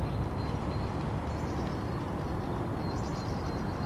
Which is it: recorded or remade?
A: recorded